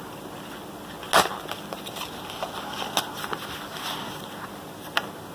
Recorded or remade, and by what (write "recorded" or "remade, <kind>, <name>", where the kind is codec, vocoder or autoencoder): recorded